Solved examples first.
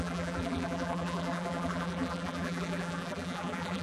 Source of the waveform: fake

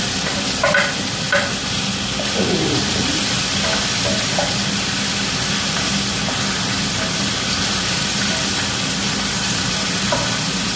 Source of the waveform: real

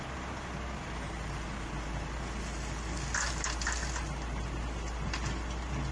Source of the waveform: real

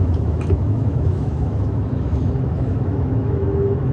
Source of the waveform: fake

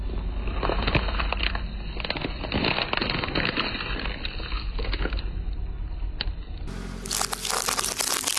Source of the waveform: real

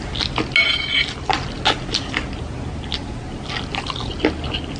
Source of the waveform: real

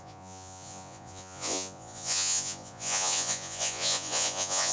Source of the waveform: fake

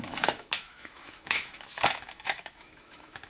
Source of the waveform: fake